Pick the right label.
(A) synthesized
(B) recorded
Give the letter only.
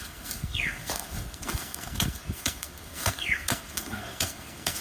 A